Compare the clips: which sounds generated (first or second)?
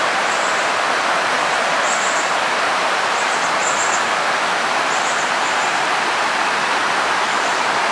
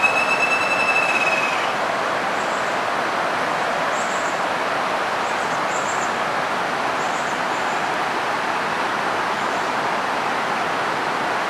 first